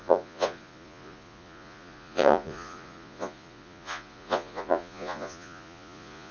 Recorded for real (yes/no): no